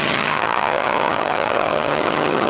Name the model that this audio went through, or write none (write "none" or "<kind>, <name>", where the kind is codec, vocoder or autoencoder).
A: vocoder, HiFi-GAN